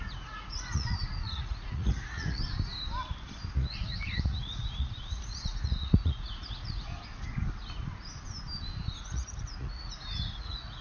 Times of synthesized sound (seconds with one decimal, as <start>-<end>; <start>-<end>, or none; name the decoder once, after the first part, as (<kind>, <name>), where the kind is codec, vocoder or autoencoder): 0.0-2.4 (vocoder, Vocos); 3.5-6.9; 9.0-10.8